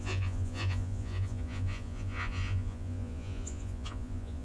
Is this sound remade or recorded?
remade